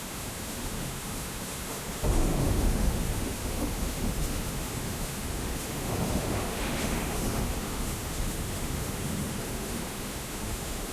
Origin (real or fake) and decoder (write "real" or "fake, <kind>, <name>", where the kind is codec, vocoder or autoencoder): fake, autoencoder, DAC-VAE